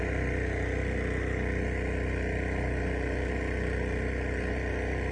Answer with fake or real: real